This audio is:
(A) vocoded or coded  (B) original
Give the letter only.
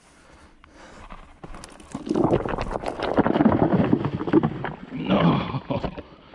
B